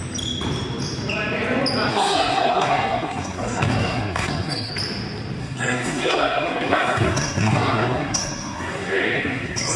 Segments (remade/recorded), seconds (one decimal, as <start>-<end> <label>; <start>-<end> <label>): 0.0-1.9 recorded; 1.9-4.7 remade; 4.7-5.4 recorded; 5.4-9.8 remade